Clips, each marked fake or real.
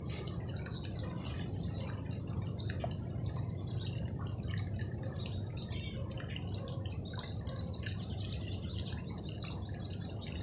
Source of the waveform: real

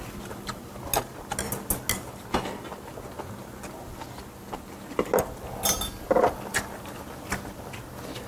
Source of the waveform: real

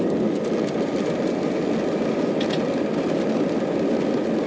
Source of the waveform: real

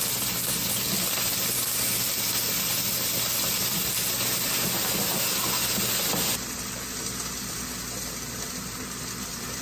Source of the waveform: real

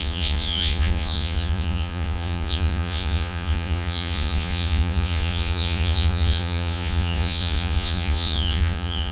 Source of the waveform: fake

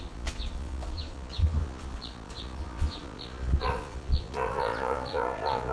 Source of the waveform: fake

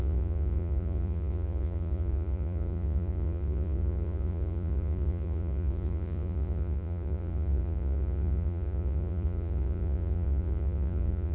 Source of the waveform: fake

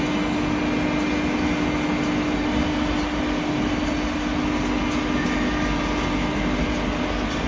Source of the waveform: real